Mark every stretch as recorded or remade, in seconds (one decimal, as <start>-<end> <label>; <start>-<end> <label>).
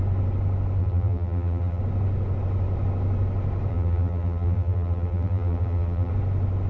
0.0-0.8 recorded; 0.8-1.8 remade; 1.8-3.7 recorded; 3.7-6.1 remade; 6.1-6.7 recorded